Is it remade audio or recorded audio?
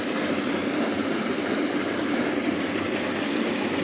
recorded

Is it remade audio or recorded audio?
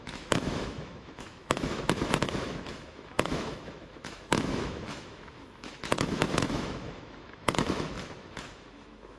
remade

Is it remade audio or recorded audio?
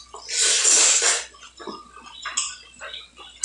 recorded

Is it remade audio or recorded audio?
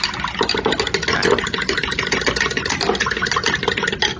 recorded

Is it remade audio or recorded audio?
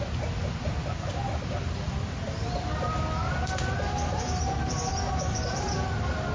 recorded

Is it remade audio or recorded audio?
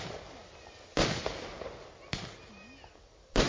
recorded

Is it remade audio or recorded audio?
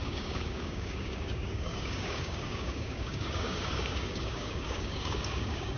remade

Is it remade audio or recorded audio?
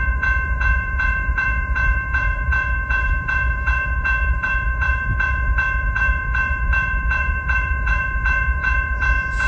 remade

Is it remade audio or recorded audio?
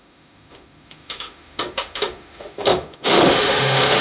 remade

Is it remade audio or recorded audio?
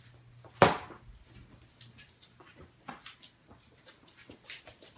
recorded